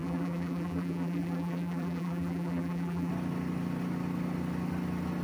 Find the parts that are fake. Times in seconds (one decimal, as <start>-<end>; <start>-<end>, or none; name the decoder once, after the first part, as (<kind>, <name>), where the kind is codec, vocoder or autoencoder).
0.0-3.1 (vocoder, BigVGAN v2)